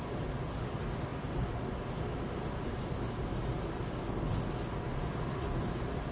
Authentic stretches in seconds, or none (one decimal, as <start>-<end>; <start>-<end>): 0.0-6.1